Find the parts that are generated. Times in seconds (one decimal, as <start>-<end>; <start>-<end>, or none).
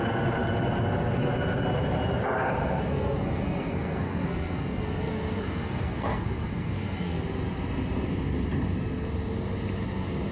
2.6-7.2